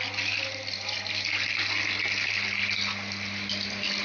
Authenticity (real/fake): real